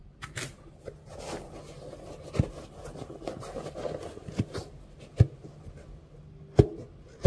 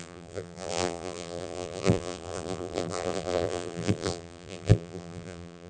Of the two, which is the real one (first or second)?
first